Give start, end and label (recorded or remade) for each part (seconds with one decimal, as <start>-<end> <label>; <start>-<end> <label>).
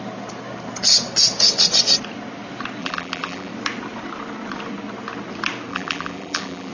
0.0-2.8 recorded; 2.8-3.5 remade; 3.5-5.7 recorded; 5.7-6.7 remade